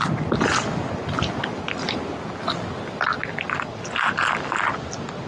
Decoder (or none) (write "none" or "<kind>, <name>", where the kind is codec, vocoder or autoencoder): none